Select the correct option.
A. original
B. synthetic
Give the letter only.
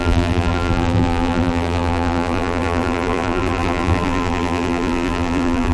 B